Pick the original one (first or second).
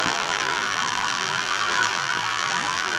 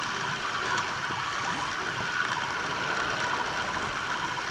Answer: second